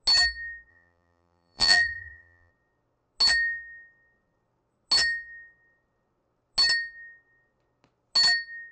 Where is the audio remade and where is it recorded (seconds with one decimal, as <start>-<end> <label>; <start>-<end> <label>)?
0.0-0.7 recorded; 0.7-2.5 remade; 2.5-8.7 recorded